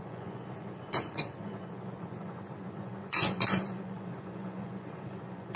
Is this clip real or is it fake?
fake